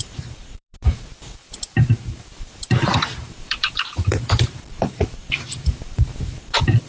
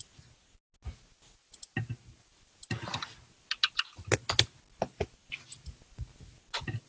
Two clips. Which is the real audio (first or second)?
second